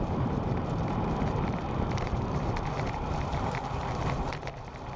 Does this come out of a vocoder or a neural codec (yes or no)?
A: yes